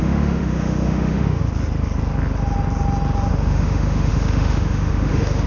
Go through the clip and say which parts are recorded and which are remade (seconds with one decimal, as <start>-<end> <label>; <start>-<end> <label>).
0.0-1.4 remade; 1.4-3.3 recorded; 3.3-5.5 remade